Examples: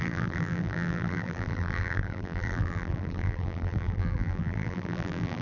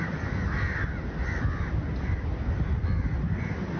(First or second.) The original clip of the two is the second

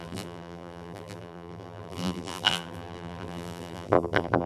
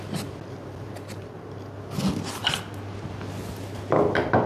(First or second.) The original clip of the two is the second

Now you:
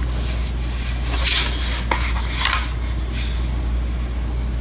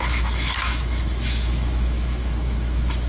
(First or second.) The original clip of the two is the first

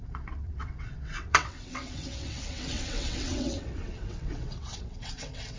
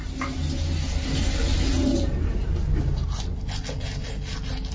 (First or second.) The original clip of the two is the second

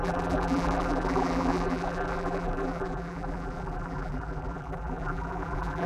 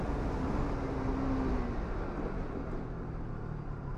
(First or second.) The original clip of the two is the second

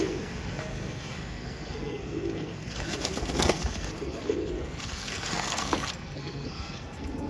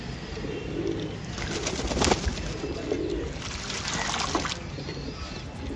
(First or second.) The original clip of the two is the second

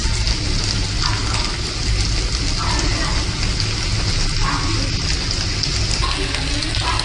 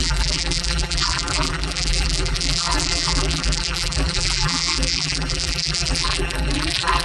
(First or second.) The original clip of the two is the first